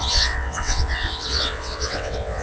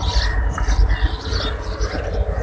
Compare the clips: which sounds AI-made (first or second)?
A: first